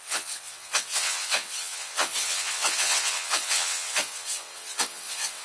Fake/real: fake